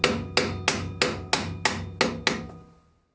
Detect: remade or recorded recorded